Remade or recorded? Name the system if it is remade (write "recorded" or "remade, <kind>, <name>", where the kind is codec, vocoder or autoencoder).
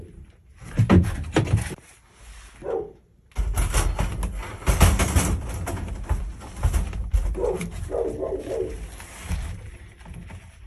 recorded